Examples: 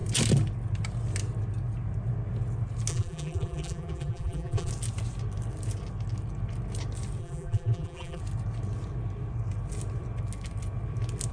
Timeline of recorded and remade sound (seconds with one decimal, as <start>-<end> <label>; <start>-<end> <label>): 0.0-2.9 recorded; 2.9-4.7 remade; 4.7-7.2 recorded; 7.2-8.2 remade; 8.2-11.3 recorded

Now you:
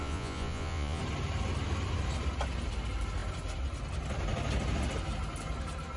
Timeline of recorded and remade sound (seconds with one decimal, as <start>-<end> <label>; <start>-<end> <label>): 0.0-1.0 remade; 1.0-6.0 recorded

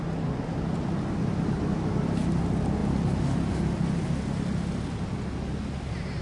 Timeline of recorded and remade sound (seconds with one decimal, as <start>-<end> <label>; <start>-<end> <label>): 0.0-6.2 recorded

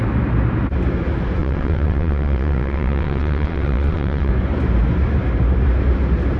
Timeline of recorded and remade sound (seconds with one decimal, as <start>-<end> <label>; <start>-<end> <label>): 0.0-1.4 recorded; 1.4-4.3 remade; 4.3-6.4 recorded

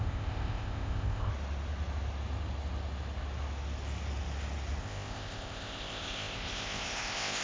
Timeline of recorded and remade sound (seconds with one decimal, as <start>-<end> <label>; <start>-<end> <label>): 0.0-1.3 remade; 1.3-4.8 recorded; 4.8-7.4 remade

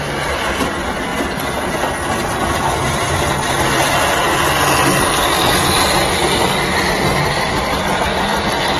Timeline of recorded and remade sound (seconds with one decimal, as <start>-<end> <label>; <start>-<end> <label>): 0.0-8.8 recorded